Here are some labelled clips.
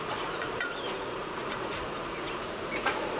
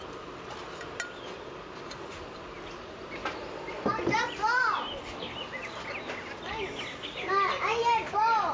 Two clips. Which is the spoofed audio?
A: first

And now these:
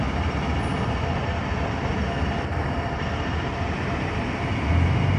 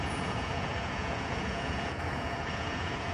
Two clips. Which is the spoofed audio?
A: second